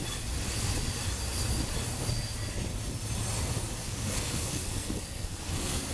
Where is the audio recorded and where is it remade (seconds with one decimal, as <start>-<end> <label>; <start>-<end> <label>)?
0.0-3.8 recorded; 3.8-5.9 remade